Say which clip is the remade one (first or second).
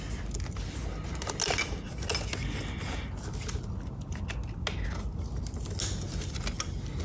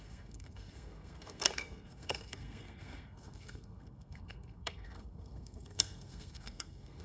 second